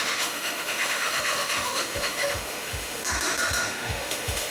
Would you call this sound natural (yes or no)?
no